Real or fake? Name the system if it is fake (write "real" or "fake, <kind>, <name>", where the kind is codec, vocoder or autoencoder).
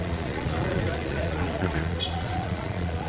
fake, vocoder, Vocos